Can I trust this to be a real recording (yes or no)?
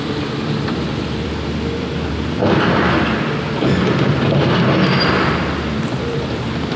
no